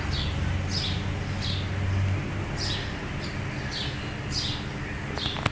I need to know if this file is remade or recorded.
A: recorded